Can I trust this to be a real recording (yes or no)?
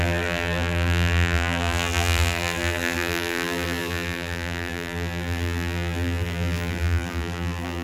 no